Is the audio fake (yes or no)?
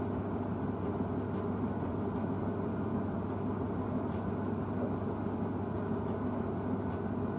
no